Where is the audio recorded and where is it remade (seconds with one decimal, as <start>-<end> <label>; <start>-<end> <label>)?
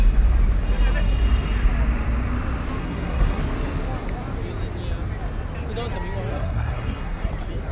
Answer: 0.0-2.8 recorded; 2.8-3.4 remade; 3.4-6.3 recorded; 6.3-7.3 remade; 7.3-7.7 recorded